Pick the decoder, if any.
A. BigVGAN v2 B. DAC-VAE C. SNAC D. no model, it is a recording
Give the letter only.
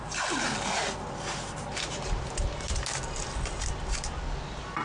D